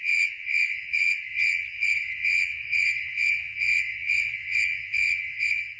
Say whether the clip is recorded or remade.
remade